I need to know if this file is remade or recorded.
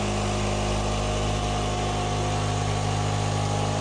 recorded